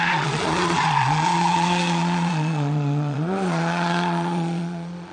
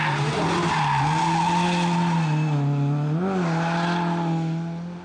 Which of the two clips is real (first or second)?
second